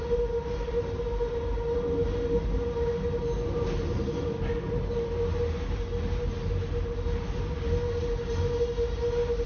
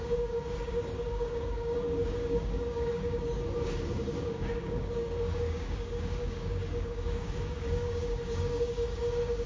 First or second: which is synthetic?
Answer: second